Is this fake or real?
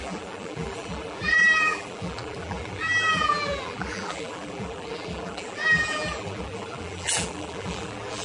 fake